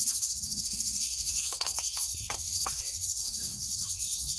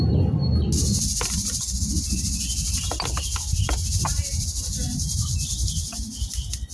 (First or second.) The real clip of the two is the second